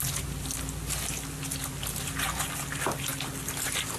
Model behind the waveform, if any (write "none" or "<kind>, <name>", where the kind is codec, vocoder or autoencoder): none